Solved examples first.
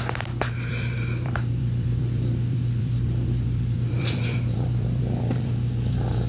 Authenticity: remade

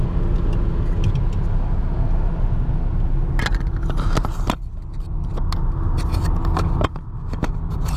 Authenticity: recorded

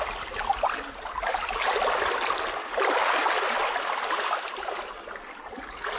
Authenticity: recorded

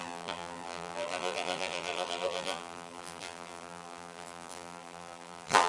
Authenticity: remade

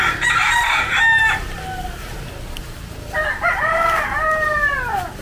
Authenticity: recorded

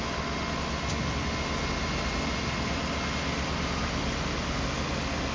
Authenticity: recorded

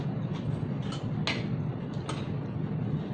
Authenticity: recorded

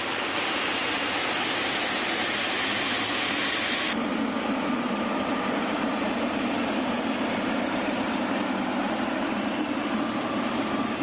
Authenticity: remade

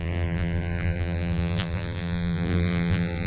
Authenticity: remade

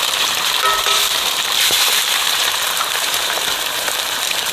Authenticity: remade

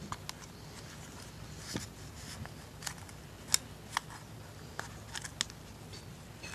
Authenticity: recorded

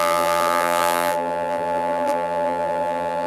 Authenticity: remade